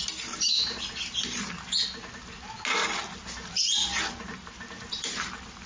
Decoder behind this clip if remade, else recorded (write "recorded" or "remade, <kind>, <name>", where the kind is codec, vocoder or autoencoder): recorded